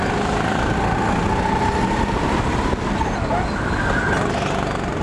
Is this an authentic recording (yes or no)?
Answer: yes